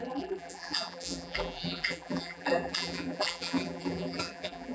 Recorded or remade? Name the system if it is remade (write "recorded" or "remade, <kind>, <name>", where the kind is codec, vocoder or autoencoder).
remade, vocoder, BigVGAN v2